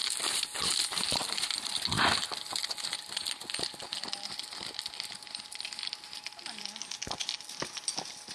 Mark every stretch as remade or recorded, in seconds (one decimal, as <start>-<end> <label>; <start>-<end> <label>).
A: 0.0-2.7 remade; 2.7-8.3 recorded